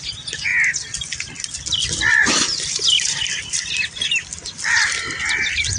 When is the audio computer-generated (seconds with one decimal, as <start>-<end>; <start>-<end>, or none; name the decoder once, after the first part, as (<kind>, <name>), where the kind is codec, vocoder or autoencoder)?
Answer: none